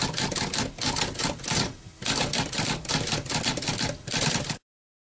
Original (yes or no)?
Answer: yes